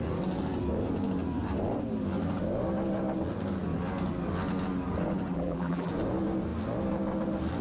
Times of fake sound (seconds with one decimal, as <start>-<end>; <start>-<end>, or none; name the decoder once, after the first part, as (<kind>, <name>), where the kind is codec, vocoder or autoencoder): 5.3-5.9 (vocoder, BigVGAN v2)